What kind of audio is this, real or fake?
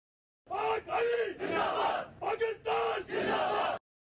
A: real